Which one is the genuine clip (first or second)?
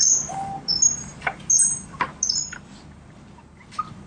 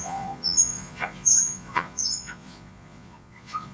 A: first